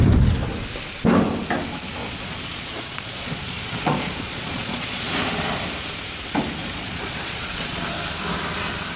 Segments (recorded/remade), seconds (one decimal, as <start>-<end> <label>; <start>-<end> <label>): 0.0-2.0 recorded; 2.0-5.1 remade; 5.1-6.6 recorded; 6.6-7.8 remade; 7.8-9.0 recorded